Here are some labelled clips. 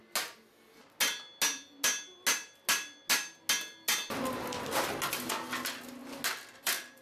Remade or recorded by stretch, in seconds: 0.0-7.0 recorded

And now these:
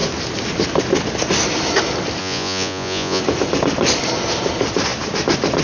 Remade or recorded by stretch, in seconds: 0.0-2.2 recorded; 2.2-3.2 remade; 3.2-5.6 recorded

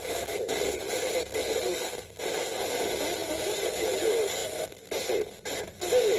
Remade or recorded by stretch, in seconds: 0.0-1.4 recorded; 1.4-2.2 remade; 2.2-6.2 recorded

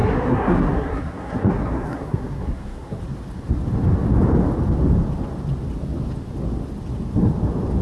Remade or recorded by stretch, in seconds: 0.0-3.0 remade; 3.0-7.8 recorded